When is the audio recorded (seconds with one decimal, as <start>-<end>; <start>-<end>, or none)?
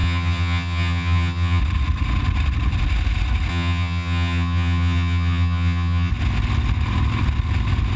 1.6-3.5; 6.1-8.0